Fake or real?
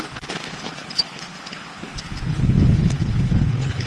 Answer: fake